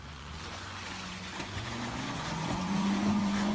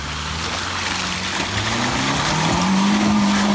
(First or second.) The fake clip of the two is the first